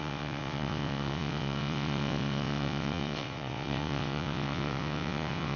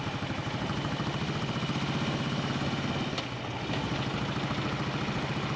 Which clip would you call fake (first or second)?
first